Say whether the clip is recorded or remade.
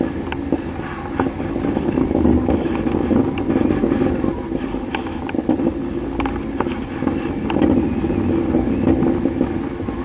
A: recorded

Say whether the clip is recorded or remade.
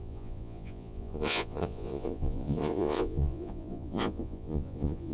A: remade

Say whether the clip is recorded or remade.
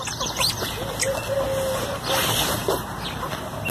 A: recorded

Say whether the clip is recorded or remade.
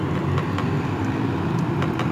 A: recorded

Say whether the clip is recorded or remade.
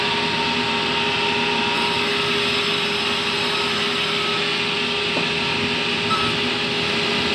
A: recorded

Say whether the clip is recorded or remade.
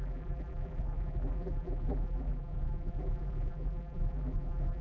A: remade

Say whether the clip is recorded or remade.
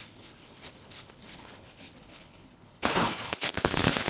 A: remade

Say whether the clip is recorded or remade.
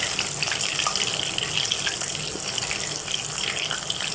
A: recorded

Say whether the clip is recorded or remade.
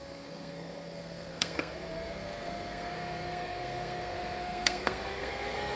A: remade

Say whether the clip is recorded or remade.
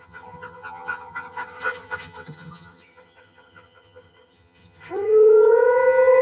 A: remade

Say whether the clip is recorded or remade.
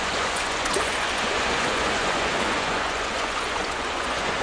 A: remade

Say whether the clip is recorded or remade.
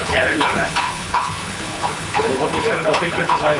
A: remade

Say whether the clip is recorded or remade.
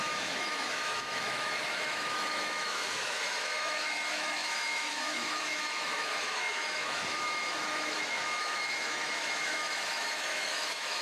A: remade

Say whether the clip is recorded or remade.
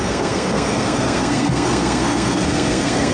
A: remade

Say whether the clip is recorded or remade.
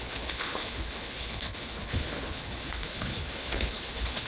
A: remade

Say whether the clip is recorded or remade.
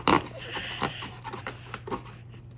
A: recorded